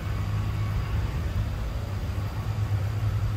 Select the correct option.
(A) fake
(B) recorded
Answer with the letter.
B